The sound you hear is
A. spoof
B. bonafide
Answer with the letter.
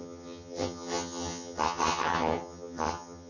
A